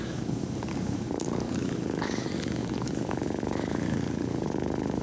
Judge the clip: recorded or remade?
remade